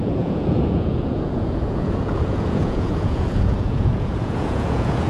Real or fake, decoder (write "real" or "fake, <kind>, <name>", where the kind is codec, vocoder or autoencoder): fake, vocoder, Vocos